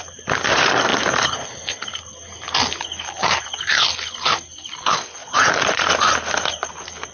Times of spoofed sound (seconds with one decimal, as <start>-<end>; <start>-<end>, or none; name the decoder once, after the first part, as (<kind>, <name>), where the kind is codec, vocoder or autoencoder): 5.2-5.9 (vocoder, Vocos)